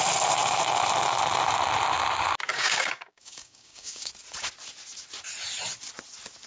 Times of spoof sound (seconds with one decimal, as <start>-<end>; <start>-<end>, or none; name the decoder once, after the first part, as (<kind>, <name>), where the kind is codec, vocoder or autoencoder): 2.5-4.1 (codec, DAC)